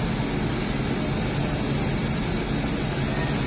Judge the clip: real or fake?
real